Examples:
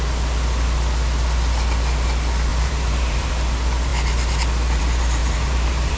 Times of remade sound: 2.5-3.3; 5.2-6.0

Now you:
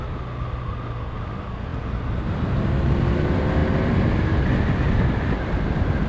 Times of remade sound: none